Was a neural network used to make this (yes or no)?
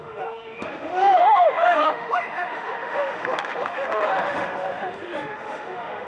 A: yes